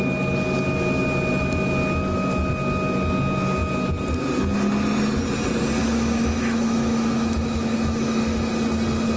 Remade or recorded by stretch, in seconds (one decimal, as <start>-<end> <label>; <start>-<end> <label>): 0.0-5.8 recorded; 5.8-8.5 remade; 8.5-9.2 recorded